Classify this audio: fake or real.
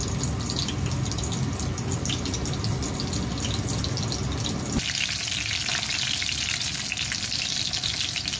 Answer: real